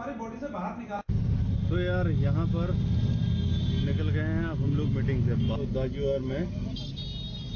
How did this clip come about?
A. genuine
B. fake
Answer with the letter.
A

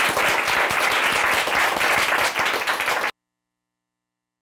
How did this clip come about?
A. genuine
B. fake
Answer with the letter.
A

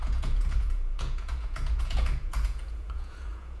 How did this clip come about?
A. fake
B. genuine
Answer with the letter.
A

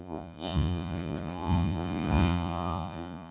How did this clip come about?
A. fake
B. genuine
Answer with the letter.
A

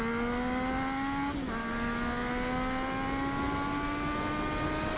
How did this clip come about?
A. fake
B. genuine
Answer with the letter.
B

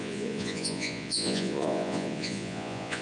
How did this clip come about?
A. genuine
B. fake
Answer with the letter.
B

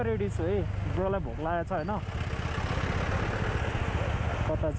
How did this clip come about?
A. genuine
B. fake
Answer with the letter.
A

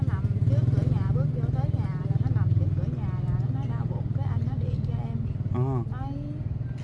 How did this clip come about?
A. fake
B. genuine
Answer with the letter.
B